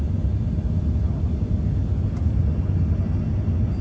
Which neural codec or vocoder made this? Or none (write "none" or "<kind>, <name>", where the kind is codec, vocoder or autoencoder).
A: none